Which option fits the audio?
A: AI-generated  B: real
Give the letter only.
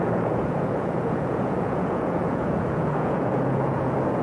A